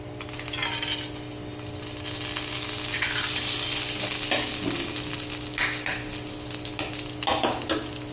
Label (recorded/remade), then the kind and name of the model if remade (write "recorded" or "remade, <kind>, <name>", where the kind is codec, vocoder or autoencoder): recorded